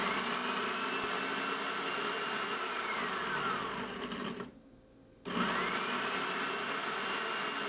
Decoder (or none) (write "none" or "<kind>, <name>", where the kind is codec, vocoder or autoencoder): none